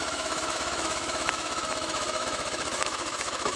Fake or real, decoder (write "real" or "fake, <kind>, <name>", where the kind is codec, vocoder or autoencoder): fake, autoencoder, DAC-VAE